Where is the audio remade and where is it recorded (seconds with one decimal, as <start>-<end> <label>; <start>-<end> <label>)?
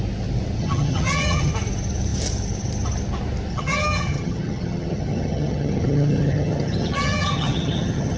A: 0.0-0.6 recorded; 0.6-1.5 remade; 1.5-3.5 recorded; 3.5-8.2 remade